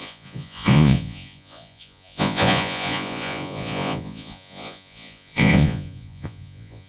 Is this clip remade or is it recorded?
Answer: remade